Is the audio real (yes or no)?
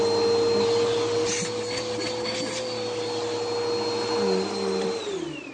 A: yes